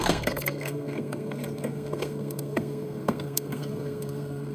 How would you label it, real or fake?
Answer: fake